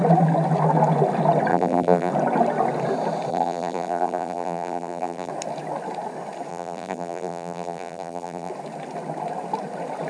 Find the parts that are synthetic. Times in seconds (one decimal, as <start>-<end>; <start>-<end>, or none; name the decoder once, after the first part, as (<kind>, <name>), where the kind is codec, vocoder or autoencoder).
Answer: 1.5-2.1 (vocoder, BigVGAN v2); 3.3-5.3; 6.5-8.5